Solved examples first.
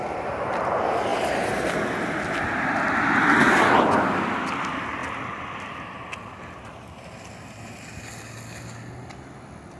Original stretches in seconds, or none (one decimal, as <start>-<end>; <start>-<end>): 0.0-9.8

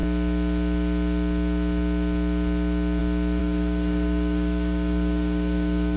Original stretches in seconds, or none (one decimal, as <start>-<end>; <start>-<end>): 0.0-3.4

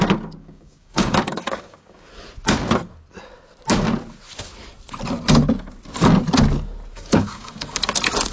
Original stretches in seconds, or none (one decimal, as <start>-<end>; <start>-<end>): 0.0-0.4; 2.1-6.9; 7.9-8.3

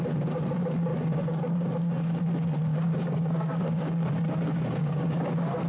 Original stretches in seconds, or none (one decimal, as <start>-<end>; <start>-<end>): 0.0-0.9; 2.2-2.7; 4.1-4.8; 5.3-5.7

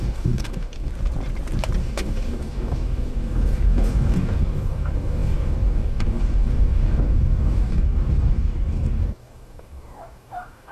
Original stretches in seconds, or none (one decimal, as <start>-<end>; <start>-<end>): 0.9-1.8

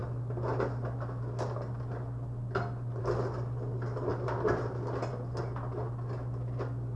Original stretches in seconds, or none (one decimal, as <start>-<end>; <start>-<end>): 0.0-7.0